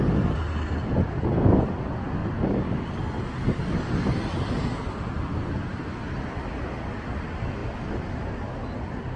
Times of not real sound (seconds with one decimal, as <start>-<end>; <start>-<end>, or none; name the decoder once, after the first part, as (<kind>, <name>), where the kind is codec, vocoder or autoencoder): none